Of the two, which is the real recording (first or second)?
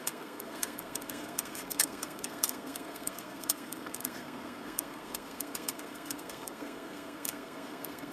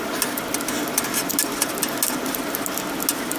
second